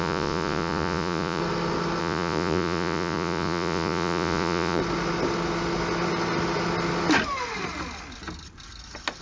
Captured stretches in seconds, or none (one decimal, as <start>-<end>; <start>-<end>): 1.4-2.0; 4.8-9.2